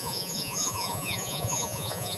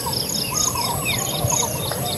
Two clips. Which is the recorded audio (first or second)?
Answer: second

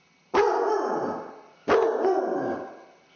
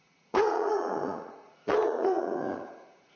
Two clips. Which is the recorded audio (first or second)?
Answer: first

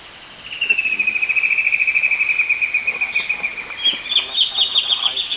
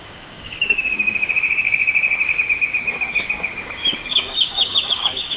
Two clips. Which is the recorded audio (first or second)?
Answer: first